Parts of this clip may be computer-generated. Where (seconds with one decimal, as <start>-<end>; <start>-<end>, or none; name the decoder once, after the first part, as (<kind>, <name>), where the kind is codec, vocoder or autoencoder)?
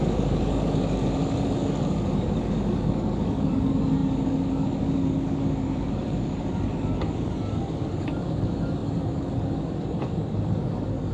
0.0-11.1 (codec, DAC)